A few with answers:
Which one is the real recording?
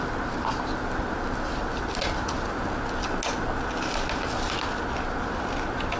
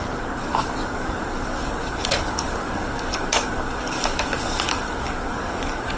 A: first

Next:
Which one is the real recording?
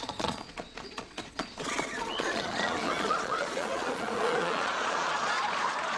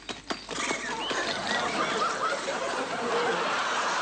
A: second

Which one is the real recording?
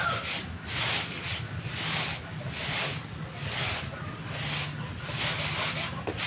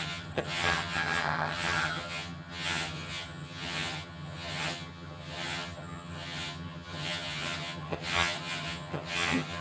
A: first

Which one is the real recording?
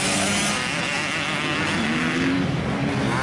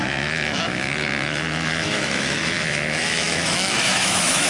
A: first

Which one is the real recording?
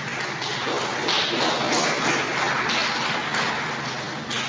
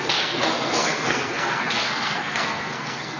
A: first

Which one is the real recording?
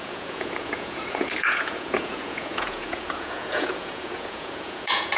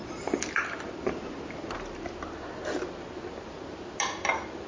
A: second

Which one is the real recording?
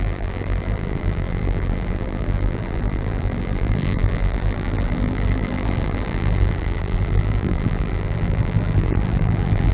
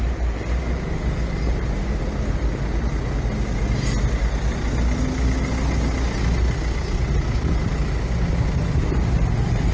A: second